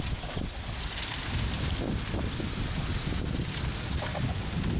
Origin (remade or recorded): recorded